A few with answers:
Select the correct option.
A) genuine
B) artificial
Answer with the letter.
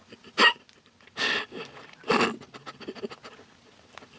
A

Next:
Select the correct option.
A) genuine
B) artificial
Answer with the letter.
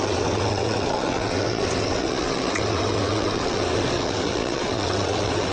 B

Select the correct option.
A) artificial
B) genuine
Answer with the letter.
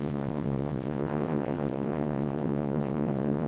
A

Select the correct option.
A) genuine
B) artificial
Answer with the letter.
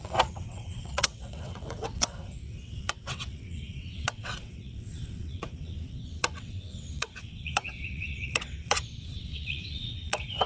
B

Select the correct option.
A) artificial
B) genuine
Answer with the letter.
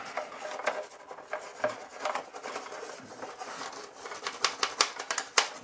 B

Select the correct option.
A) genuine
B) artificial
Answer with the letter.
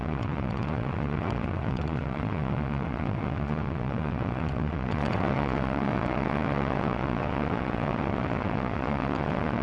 B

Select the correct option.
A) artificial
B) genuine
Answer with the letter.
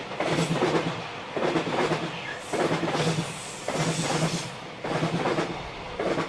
B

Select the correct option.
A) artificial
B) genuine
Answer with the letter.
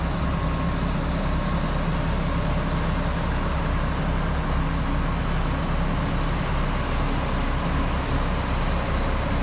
B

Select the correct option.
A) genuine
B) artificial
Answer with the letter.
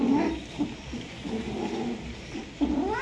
A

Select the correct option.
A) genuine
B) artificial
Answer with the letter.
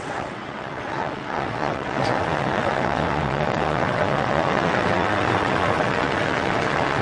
B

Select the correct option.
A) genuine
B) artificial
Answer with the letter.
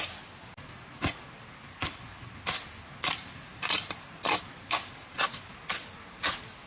A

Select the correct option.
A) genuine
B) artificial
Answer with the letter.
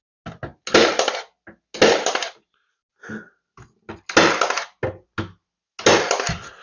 A